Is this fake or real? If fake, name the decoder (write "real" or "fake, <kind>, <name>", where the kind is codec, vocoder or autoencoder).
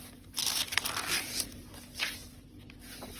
real